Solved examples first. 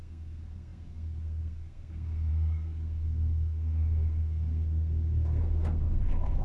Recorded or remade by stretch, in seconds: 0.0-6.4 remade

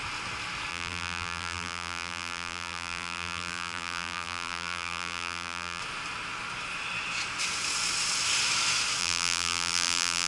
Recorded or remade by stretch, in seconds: 0.0-0.7 recorded; 0.7-5.8 remade; 5.8-9.0 recorded; 9.0-10.3 remade

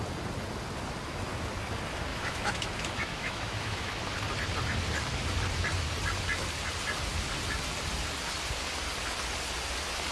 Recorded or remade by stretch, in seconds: 0.0-2.1 recorded; 2.1-3.9 remade; 3.9-10.1 recorded

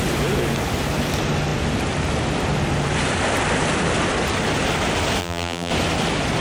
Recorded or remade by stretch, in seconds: 0.0-5.2 recorded; 5.2-5.7 remade; 5.7-6.4 recorded